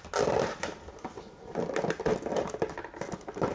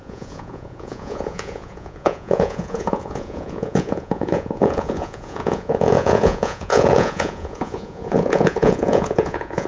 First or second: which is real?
first